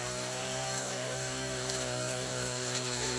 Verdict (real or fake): fake